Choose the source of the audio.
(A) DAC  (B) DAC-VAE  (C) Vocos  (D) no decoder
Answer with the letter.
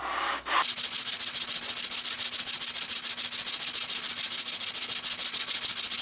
D